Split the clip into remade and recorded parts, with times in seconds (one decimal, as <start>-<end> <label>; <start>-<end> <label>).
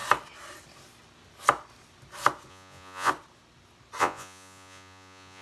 0.0-2.5 recorded; 2.5-3.1 remade; 3.1-4.0 recorded; 4.0-5.4 remade